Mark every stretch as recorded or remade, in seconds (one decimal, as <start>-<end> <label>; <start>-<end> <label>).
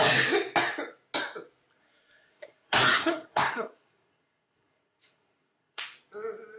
0.0-1.8 recorded; 1.8-5.8 remade; 5.8-6.6 recorded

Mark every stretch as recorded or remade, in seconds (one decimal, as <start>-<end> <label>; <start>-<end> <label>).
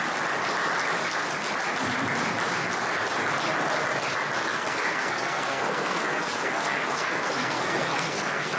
0.0-4.5 recorded; 4.5-8.6 remade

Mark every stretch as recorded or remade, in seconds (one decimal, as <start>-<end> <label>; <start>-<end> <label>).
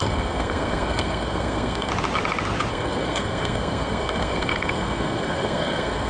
0.0-1.9 remade; 1.9-2.7 recorded; 2.7-6.1 remade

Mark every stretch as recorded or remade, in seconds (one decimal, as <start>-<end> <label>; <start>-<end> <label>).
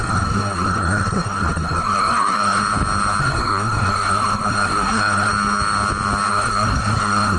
0.0-2.6 remade; 2.6-3.2 recorded; 3.2-5.3 remade; 5.3-6.3 recorded; 6.3-7.4 remade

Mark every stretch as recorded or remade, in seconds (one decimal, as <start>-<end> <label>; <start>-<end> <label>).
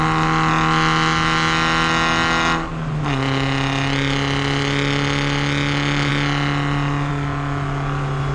0.0-8.3 recorded